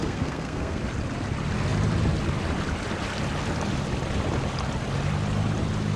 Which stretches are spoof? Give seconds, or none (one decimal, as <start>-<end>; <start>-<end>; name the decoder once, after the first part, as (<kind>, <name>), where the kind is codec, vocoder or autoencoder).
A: 0.0-0.8 (codec, SNAC)